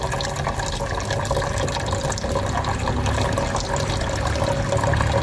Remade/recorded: recorded